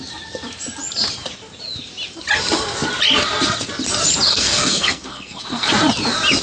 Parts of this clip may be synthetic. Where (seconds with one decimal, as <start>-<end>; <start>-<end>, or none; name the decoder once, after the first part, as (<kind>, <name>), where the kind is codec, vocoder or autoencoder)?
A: 4.3-5.7 (codec, SNAC)